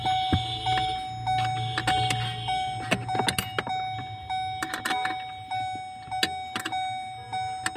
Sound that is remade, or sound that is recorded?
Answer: recorded